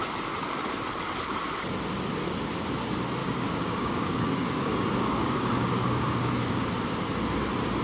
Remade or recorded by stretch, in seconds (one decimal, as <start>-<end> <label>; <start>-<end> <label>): 0.0-3.2 recorded; 3.2-6.7 remade; 6.7-7.8 recorded